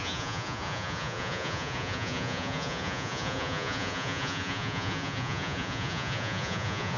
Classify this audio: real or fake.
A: fake